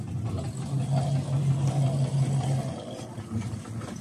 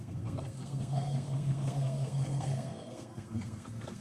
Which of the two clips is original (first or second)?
first